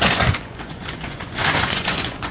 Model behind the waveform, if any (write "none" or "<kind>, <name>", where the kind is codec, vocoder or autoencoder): vocoder, Vocos